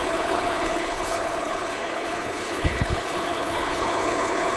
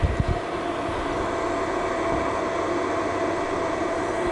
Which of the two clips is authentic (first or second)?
second